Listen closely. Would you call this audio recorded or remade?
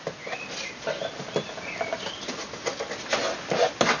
recorded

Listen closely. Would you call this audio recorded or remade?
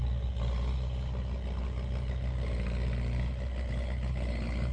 recorded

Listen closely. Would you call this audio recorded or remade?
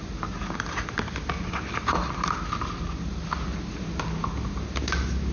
recorded